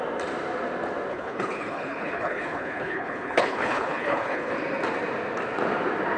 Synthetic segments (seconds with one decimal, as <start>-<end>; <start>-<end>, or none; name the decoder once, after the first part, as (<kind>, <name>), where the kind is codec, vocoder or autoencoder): 1.1-4.5 (codec, HILCodec)